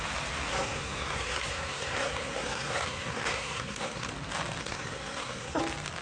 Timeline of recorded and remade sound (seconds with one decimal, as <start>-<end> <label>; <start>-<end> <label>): 0.0-0.5 recorded; 0.5-4.1 remade; 4.1-4.6 recorded; 4.6-5.6 remade; 5.6-6.0 recorded